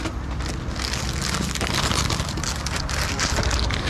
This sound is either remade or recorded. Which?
recorded